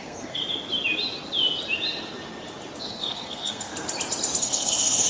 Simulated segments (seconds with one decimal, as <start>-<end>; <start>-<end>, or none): 0.0-0.4; 2.8-3.7; 4.4-5.1